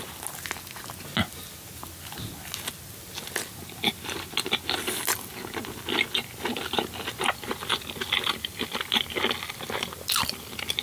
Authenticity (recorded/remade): recorded